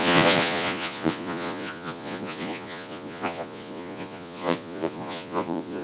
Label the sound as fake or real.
fake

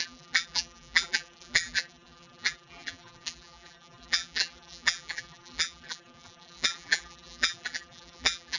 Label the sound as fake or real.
fake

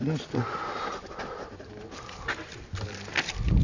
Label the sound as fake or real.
real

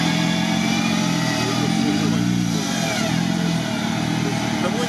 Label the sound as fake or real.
real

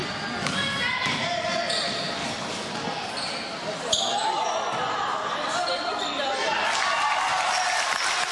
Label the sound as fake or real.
real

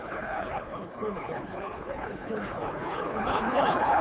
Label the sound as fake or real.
fake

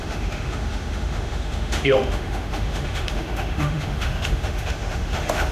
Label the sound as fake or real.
fake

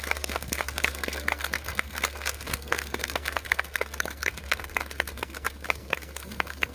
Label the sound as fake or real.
fake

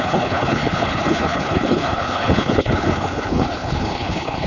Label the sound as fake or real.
fake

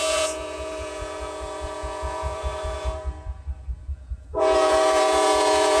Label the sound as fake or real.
fake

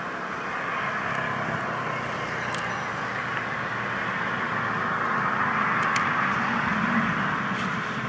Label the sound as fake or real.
real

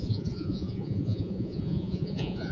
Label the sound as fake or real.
fake